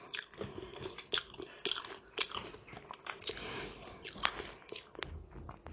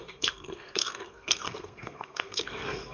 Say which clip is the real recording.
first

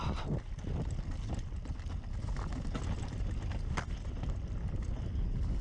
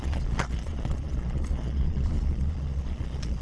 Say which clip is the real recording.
first